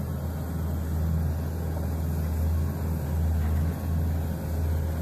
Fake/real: real